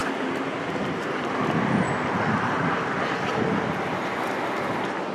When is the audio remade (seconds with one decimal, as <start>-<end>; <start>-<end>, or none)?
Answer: none